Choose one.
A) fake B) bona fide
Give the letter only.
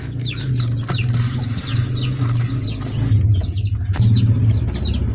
B